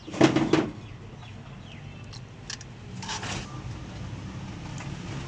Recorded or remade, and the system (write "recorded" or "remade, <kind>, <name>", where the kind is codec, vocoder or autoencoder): recorded